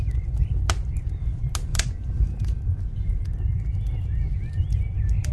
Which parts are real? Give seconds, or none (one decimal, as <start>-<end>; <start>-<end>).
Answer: 0.0-1.7